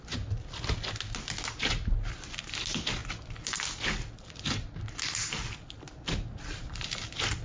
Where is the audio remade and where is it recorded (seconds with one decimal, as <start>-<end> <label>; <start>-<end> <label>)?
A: 0.0-7.4 recorded